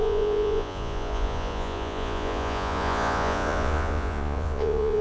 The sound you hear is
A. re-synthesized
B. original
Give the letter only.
A